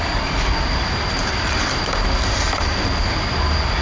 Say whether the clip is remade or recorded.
recorded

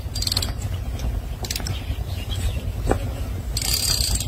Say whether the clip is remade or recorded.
recorded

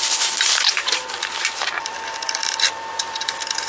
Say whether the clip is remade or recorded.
remade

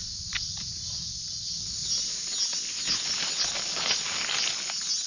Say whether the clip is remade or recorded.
recorded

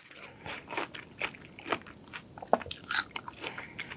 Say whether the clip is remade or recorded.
recorded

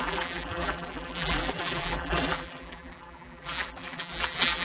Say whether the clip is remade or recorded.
remade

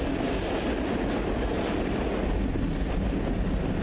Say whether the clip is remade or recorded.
recorded